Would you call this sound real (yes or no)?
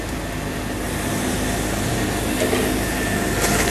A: yes